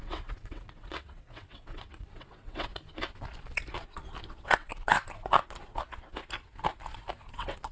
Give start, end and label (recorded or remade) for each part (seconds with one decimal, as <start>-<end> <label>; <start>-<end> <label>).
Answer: 0.0-2.7 remade; 2.7-4.3 recorded; 4.3-4.7 remade; 4.7-7.3 recorded; 7.3-7.7 remade